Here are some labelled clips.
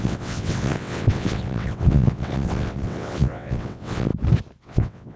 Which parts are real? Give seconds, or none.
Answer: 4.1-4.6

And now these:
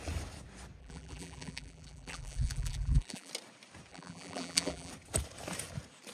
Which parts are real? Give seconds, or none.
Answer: 0.0-0.8; 3.3-3.9; 4.9-6.1

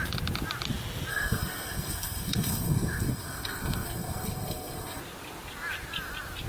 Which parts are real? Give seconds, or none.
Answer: 0.0-1.1; 5.0-6.5

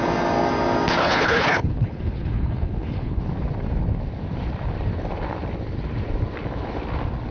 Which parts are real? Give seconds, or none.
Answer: 0.0-1.0; 3.2-7.3